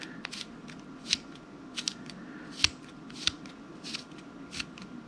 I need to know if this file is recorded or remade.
recorded